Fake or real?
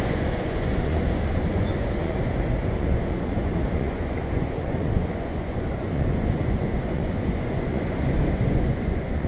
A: fake